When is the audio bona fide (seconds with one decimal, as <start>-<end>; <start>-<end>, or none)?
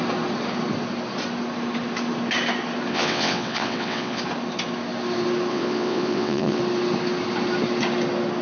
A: 0.0-2.9; 4.2-5.5; 6.6-8.4